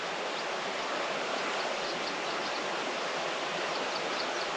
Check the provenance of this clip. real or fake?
real